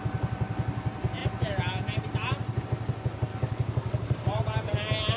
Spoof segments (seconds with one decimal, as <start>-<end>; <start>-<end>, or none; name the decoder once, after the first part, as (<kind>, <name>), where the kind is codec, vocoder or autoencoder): 3.3-4.4 (codec, DAC)